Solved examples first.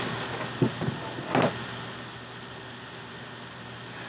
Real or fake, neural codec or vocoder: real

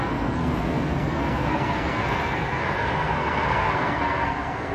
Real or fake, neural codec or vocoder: fake, codec, SNAC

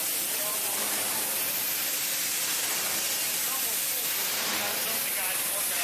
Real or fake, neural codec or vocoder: real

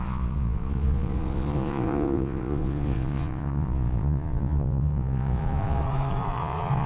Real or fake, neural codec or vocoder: fake, vocoder, Vocos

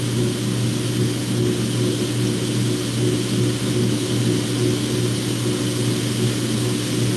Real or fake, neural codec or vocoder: real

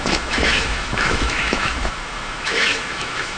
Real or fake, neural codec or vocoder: fake, autoencoder, DAC-VAE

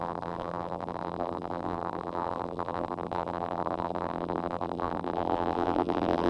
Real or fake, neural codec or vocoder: fake, vocoder, BigVGAN v2